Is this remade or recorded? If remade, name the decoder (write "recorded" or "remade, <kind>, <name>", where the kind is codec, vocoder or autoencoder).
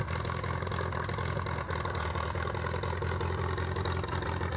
recorded